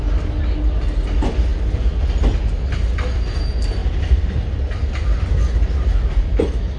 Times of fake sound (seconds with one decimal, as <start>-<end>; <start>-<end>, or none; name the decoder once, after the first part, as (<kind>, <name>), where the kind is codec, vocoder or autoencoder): none